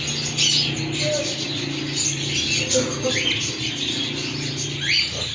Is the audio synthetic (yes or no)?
no